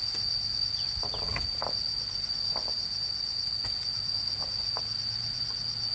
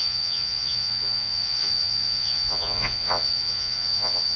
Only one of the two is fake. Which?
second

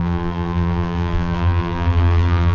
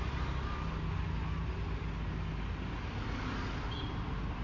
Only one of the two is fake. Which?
first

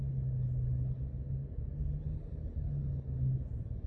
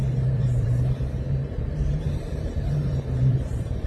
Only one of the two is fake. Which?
second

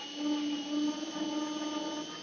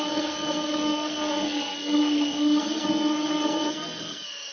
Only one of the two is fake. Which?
second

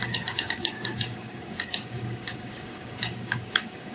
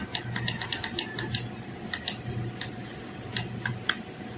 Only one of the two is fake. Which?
first